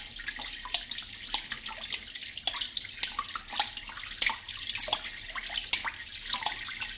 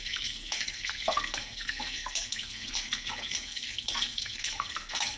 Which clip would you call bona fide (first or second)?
first